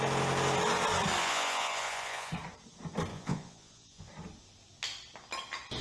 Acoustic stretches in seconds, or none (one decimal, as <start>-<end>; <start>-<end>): 0.0-1.2; 2.3-3.1; 4.1-5.8